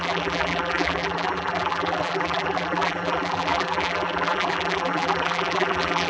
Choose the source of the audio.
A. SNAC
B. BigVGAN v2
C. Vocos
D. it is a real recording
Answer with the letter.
B